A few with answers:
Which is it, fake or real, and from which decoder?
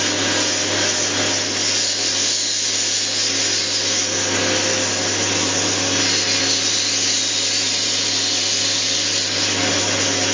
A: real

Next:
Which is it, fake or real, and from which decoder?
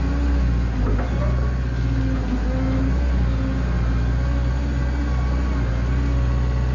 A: real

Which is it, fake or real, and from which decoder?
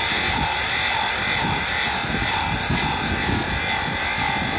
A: real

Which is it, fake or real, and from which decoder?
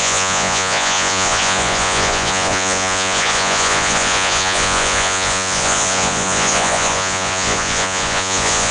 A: fake, vocoder, Vocos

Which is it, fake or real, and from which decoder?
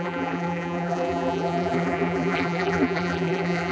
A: fake, vocoder, BigVGAN v2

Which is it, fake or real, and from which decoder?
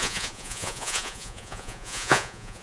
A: fake, vocoder, Vocos